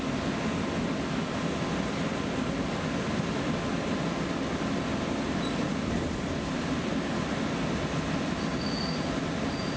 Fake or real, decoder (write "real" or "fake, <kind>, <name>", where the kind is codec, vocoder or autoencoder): real